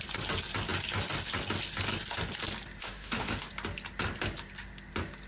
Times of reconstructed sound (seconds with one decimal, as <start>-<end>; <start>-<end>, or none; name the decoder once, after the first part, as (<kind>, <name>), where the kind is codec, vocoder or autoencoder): 2.8-3.5 (autoencoder, DAC-VAE)